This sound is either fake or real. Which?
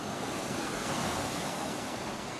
fake